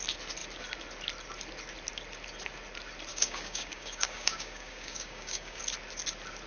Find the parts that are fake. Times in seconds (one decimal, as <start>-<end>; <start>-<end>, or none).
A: 3.1-5.6